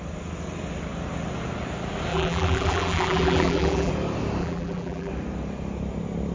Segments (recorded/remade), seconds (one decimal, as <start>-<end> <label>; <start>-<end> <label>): 0.0-2.1 recorded; 2.1-3.9 remade; 3.9-4.4 recorded; 4.4-5.1 remade; 5.1-6.3 recorded